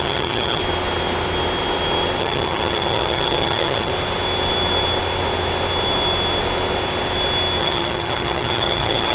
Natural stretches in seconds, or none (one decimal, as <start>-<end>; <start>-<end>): 0.6-2.2; 3.9-7.6